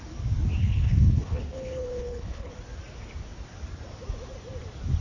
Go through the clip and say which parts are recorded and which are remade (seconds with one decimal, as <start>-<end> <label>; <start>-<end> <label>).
0.0-0.6 recorded; 0.6-2.5 remade; 2.5-5.0 recorded